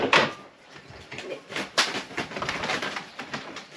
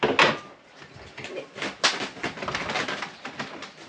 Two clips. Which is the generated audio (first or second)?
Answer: first